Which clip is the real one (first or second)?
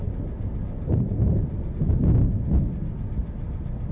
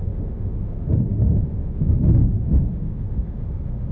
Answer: first